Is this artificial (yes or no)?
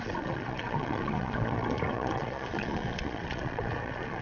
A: yes